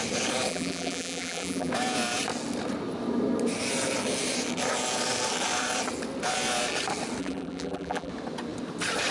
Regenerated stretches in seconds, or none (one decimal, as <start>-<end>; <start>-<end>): 0.5-1.7; 7.2-8.1